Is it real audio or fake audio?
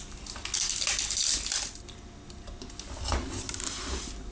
real